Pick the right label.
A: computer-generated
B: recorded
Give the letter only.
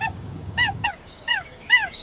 A